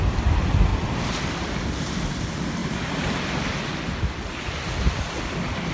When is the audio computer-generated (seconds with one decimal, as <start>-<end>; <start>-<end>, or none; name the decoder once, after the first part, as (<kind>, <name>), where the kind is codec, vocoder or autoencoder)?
0.7-1.3 (vocoder, BigVGAN v2)